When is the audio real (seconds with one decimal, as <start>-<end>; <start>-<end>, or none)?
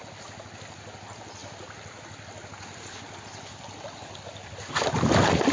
0.0-5.5